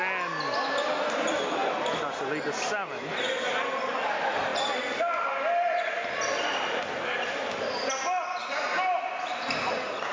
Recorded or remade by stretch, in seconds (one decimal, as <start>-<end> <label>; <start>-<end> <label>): 0.0-10.1 recorded